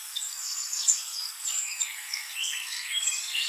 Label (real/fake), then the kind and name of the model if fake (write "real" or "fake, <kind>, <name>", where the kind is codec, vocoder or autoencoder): fake, codec, SNAC